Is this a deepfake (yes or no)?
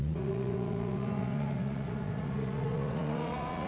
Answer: yes